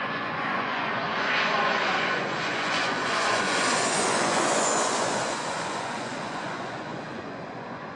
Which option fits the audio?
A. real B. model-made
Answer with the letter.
B